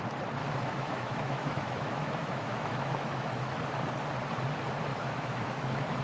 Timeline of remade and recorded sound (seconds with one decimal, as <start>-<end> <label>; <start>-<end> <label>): 0.0-0.4 recorded; 0.4-3.5 remade; 3.5-4.9 recorded; 4.9-6.0 remade